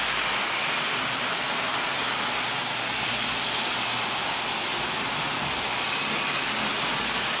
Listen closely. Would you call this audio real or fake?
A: real